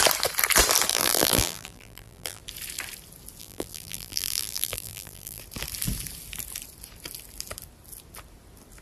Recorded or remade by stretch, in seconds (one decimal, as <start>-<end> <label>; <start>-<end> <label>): 0.0-0.9 recorded; 0.9-2.4 remade; 2.4-3.4 recorded; 3.4-5.4 remade; 5.4-8.8 recorded